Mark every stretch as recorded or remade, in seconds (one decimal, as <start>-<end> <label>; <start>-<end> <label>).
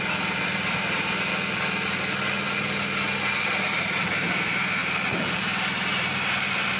0.0-1.3 remade; 1.3-3.6 recorded; 3.6-4.8 remade; 4.8-5.4 recorded; 5.4-6.8 remade